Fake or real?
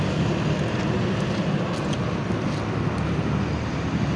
real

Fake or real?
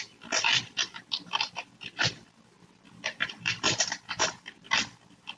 fake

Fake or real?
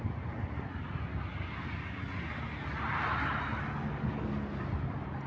real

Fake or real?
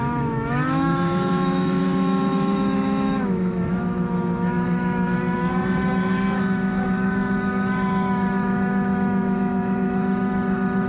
fake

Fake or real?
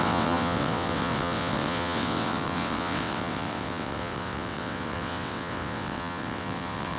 fake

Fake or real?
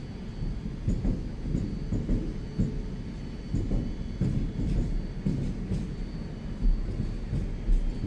real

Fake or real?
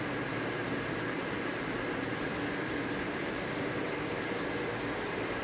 real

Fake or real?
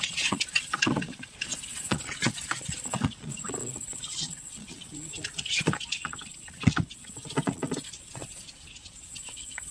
fake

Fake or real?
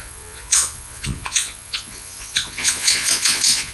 fake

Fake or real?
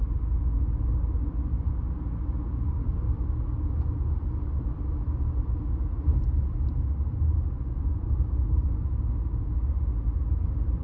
real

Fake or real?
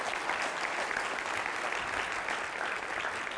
real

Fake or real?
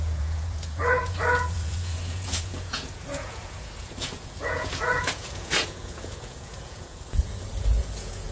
fake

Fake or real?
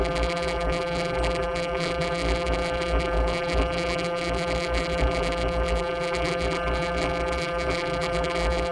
fake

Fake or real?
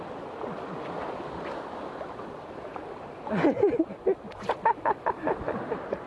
real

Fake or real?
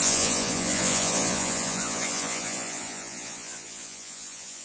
fake